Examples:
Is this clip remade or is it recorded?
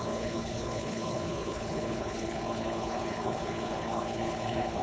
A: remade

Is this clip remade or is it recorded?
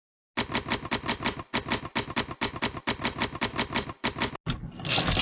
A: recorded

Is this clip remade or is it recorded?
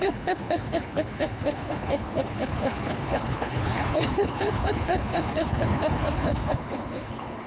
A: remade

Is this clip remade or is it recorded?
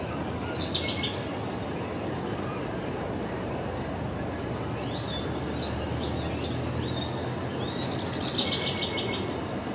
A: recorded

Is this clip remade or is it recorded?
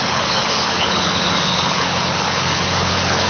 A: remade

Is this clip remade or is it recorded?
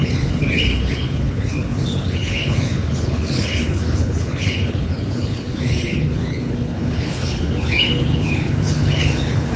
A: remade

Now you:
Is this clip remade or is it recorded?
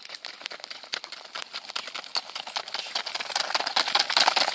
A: recorded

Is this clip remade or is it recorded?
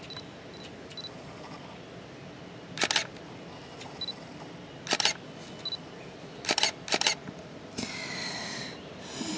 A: recorded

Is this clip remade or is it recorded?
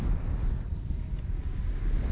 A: recorded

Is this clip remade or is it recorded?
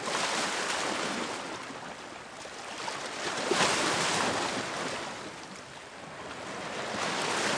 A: recorded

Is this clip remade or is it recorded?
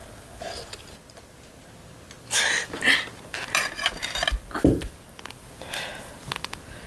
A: recorded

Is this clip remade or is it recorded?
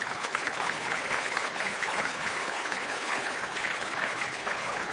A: remade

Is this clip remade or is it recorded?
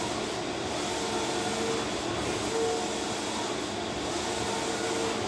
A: recorded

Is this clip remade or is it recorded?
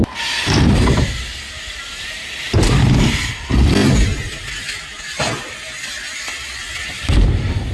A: recorded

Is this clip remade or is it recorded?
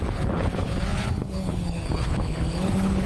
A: remade